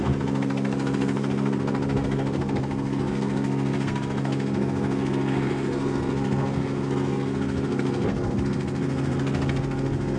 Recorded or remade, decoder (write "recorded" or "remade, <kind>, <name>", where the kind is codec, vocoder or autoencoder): remade, codec, SNAC